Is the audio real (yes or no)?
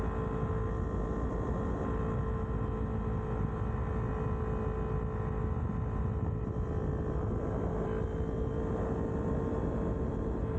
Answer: yes